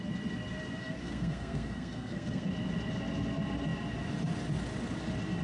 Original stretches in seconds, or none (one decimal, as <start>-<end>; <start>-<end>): 0.0-0.8; 2.5-5.4